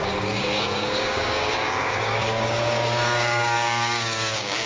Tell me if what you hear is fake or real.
fake